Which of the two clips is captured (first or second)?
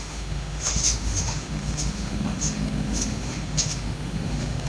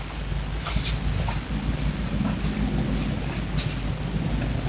second